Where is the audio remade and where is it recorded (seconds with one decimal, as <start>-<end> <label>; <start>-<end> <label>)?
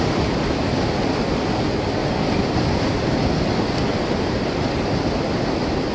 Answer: 0.0-2.0 recorded; 2.0-5.4 remade; 5.4-5.9 recorded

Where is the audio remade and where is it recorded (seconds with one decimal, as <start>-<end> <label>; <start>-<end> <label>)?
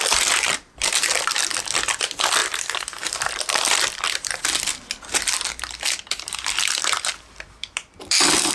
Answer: 0.0-8.5 remade